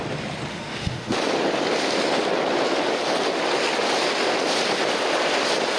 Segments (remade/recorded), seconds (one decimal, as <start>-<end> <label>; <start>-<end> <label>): 0.0-0.5 recorded; 0.5-1.2 remade; 1.2-5.8 recorded